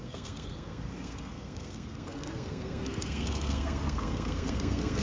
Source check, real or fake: fake